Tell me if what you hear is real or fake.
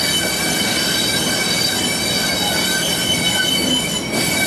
real